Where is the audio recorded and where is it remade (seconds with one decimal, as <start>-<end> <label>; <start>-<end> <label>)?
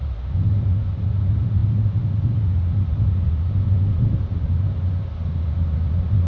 0.0-6.3 recorded